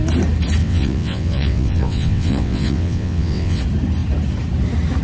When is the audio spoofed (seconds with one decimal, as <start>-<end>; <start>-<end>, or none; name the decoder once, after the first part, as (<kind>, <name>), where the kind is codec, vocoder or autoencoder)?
0.6-3.6 (vocoder, WaveNeXt)